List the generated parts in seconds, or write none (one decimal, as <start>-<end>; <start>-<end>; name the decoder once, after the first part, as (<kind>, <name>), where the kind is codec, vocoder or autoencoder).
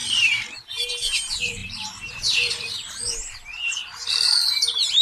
0.0-3.3 (vocoder, BigVGAN v2); 3.9-5.0